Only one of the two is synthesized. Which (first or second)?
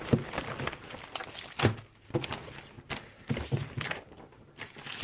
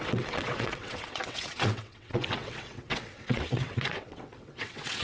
second